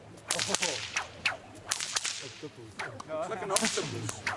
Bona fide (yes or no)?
yes